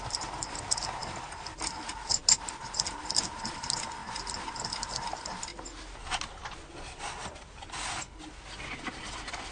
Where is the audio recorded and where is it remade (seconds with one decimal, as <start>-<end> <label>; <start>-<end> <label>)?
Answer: 0.0-9.5 recorded